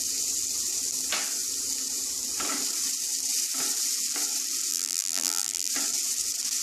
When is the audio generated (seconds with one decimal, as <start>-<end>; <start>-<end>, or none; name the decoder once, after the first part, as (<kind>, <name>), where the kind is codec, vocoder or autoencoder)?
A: 4.7-5.7 (vocoder, BigVGAN v2)